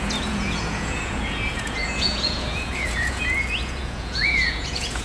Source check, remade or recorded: remade